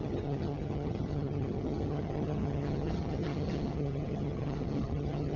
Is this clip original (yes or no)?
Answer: no